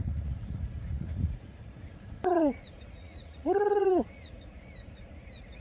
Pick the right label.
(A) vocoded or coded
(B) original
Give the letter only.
A